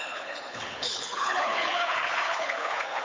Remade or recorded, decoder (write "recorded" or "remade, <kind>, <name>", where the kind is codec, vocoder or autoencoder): remade, codec, HILCodec